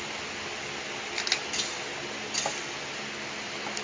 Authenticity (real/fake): real